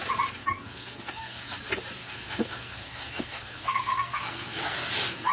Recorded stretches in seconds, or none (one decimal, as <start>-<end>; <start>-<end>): 0.0-0.4; 1.6-2.0

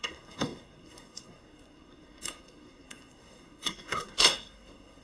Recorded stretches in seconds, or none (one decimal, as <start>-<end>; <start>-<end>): none

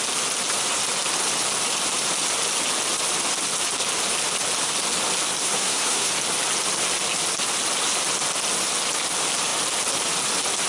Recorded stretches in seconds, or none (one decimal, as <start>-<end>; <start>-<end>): 0.0-5.4; 6.1-10.7

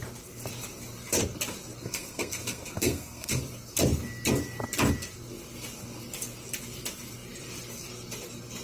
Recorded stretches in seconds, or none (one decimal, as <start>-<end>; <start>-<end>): 0.0-1.8; 3.4-8.6

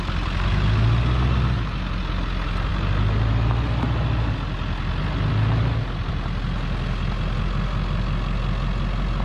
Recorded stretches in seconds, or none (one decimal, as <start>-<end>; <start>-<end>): 0.0-9.2

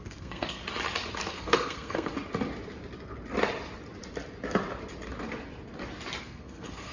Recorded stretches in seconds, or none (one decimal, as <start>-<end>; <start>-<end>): 0.6-1.3; 2.1-6.2

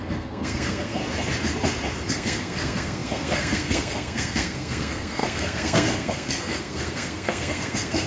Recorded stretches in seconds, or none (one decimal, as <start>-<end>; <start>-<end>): 1.0-2.1